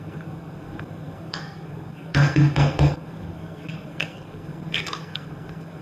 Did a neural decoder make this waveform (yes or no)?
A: yes